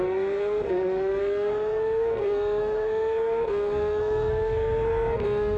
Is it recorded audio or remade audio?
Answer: remade